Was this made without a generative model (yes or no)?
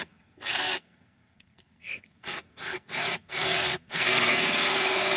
no